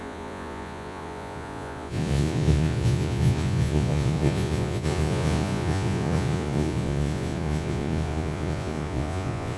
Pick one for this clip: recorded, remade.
remade